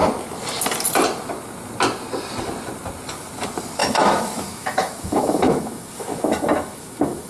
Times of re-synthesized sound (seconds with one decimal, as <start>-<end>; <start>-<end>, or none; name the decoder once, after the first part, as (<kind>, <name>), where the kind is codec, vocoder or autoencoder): 3.8-7.3 (autoencoder, DAC-VAE)